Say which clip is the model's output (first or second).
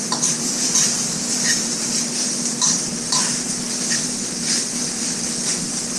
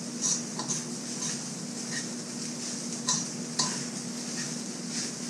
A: first